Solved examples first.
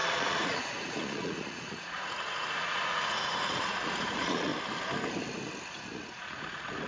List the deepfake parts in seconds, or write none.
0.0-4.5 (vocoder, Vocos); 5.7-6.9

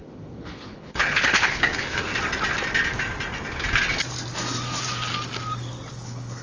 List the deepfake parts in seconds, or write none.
0.0-2.1 (codec, HILCodec); 5.9-6.4

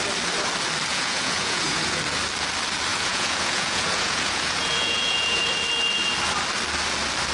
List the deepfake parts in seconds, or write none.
0.9-2.0 (vocoder, Vocos); 2.9-5.4